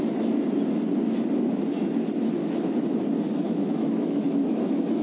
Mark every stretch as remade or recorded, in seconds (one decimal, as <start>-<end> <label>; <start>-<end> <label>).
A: 0.0-2.4 recorded; 2.4-2.9 remade; 2.9-3.3 recorded; 3.3-5.0 remade